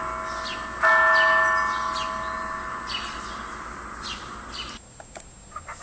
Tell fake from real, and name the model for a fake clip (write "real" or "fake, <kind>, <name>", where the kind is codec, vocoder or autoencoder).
real